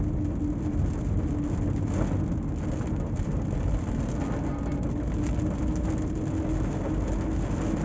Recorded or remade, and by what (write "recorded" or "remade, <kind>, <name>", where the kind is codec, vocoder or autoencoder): recorded